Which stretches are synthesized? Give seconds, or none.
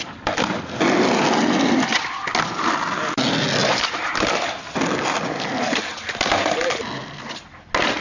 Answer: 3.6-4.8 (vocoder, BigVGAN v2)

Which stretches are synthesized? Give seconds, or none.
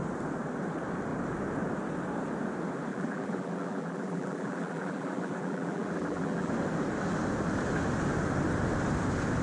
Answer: 2.9-6.5 (vocoder, BigVGAN v2)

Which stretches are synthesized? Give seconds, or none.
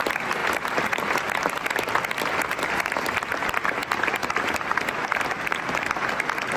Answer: 3.8-5.6 (vocoder, BigVGAN v2)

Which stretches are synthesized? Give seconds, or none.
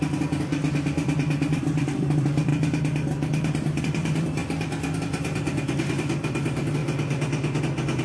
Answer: 0.0-2.5 (vocoder, BigVGAN v2); 3.8-4.4; 5.9-6.8; 7.6-8.0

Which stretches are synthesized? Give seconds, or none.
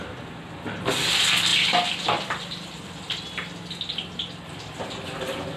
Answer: none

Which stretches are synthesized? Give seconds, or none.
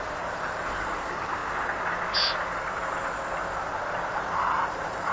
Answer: 0.0-1.4 (vocoder, BigVGAN v2); 4.1-5.1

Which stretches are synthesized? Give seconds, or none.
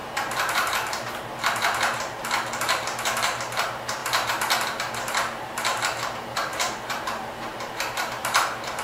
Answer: 0.0-8.8 (vocoder, BigVGAN v2)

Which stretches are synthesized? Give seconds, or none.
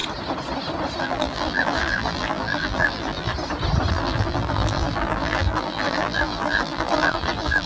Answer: 1.0-3.3 (vocoder, BigVGAN v2); 3.9-7.7